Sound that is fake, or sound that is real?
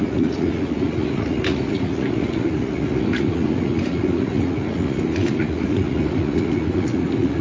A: fake